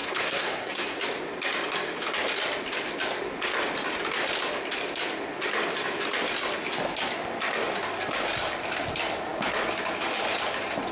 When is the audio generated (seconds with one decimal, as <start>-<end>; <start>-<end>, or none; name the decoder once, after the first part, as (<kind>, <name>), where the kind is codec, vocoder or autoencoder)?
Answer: 0.0-1.0 (codec, SNAC)